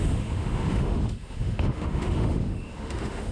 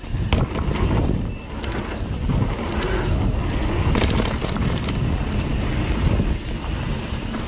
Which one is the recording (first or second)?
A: second